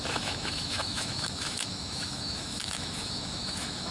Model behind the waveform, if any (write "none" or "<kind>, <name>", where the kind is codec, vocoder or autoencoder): autoencoder, DAC-VAE